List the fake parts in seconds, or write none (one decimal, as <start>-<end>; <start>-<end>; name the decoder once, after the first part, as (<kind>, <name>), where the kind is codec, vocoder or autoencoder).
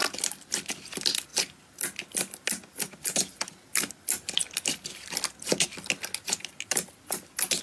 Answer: none